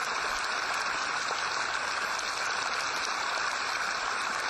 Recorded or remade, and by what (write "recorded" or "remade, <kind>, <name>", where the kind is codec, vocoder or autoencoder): recorded